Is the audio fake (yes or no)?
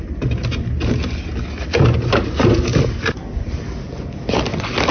no